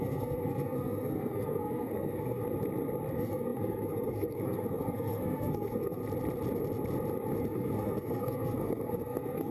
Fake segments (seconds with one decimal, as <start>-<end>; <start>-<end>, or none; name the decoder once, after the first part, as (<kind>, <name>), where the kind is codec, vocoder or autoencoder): 0.0-2.4 (codec, SNAC); 3.1-6.0; 7.4-9.5